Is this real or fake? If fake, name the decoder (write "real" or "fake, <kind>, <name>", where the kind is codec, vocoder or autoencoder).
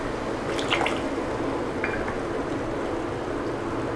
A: real